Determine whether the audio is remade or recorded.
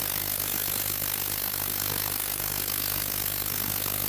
remade